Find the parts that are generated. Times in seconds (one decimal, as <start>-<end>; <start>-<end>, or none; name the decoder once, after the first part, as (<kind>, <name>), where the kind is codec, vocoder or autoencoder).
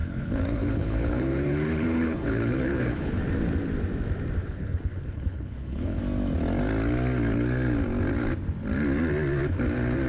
0.0-3.2 (codec, HILCodec); 4.4-6.0